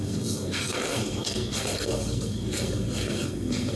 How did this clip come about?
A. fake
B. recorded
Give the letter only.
A